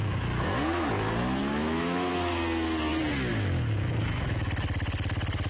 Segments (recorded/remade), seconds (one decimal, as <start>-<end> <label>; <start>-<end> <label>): 0.0-0.9 remade; 0.9-1.4 recorded; 1.4-2.1 remade; 2.1-3.3 recorded; 3.3-4.5 remade; 4.5-5.5 recorded